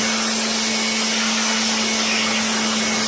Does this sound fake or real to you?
real